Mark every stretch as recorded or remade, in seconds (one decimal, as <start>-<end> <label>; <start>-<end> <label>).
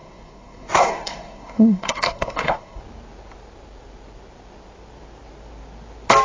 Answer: 0.0-2.8 remade; 2.8-6.2 recorded